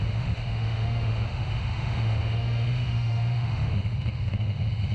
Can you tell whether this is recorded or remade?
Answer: remade